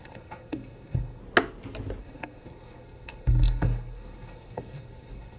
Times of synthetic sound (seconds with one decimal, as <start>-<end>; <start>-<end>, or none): 0.0-1.2; 2.0-5.4